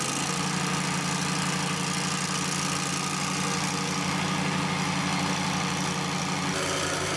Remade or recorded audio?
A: recorded